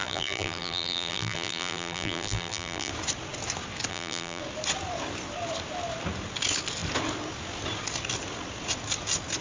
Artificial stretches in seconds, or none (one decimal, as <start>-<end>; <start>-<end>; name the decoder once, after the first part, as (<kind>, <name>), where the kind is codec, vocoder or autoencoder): 0.0-2.9 (vocoder, BigVGAN v2); 3.9-4.4